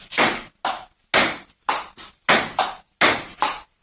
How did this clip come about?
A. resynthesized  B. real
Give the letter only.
B